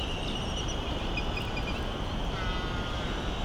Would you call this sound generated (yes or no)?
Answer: no